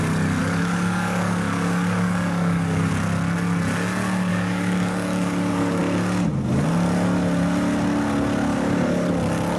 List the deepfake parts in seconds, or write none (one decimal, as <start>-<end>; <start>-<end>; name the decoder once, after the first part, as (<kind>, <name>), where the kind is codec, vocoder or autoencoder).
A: 0.4-2.9 (codec, DAC); 4.3-5.8; 8.5-9.1